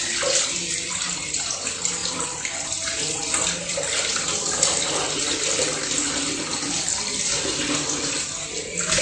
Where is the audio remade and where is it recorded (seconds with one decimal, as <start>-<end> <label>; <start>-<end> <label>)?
0.0-9.0 recorded